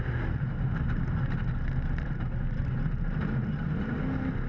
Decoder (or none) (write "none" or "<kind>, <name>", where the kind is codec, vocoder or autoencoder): none